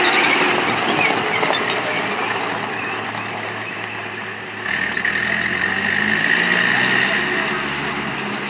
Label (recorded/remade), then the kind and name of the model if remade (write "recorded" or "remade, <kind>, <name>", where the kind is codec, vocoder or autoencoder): recorded